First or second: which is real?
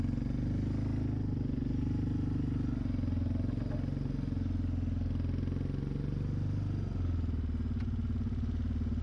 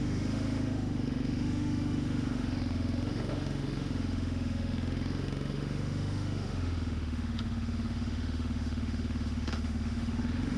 first